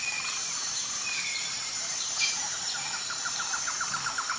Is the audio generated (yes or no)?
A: yes